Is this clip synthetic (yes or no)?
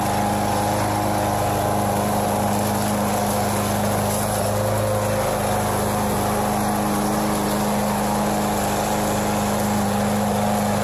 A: no